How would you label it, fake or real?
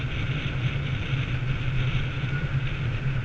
real